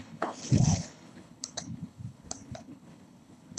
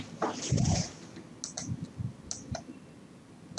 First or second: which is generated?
first